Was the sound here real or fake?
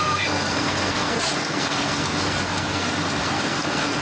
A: fake